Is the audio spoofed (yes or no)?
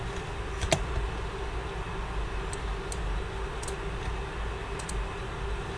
no